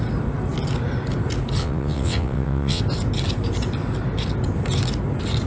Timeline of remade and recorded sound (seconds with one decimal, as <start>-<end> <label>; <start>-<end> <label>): 0.0-1.6 recorded; 1.6-2.8 remade; 2.8-5.5 recorded